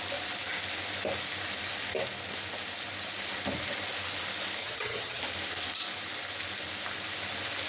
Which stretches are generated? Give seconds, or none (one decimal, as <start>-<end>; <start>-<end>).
4.6-5.2